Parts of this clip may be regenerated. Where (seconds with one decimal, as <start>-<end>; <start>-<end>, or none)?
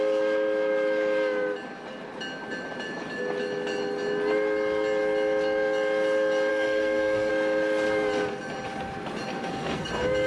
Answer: 6.5-7.3; 9.3-9.9